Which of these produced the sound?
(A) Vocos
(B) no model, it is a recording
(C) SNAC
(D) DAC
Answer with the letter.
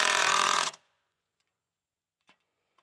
A